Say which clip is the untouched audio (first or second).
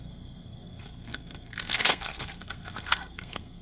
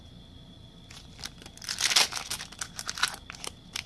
second